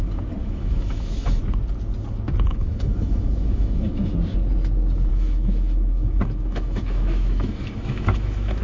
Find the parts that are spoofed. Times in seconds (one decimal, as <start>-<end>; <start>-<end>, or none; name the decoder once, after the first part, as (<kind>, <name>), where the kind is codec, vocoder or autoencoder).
0.4-1.4 (autoencoder, DAC-VAE); 2.5-4.1; 5.1-8.6